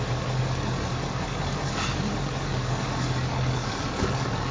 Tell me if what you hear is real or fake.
fake